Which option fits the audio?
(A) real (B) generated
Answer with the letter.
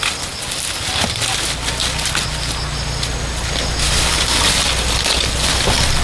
A